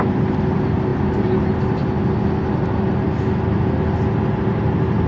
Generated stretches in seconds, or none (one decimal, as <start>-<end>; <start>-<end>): 0.0-0.9; 1.4-1.8